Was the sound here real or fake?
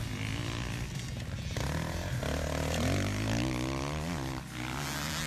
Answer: real